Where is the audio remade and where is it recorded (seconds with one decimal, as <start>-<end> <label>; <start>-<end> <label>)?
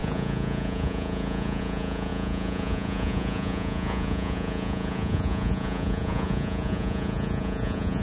0.0-8.0 remade